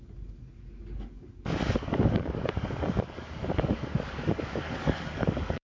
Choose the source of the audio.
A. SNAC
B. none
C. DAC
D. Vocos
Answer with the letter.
C